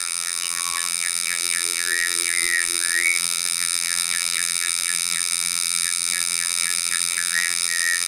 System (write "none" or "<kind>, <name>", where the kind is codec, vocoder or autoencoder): vocoder, BigVGAN v2